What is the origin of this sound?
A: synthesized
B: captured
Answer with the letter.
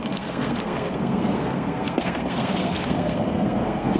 A